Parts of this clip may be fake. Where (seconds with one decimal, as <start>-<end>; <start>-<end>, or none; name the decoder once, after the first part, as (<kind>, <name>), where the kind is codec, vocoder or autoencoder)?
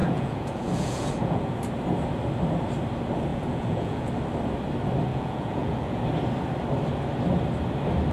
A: 0.0-1.6 (vocoder, Vocos); 3.3-4.1; 5.1-6.0